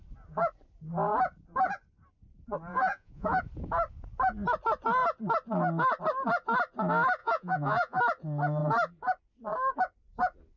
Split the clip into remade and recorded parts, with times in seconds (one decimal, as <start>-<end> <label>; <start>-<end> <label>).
0.0-2.7 recorded; 2.7-3.4 remade; 3.4-7.2 recorded; 7.2-8.0 remade; 8.0-10.6 recorded